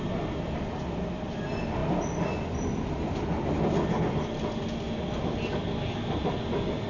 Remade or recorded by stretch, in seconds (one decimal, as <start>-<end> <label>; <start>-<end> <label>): 0.0-6.9 recorded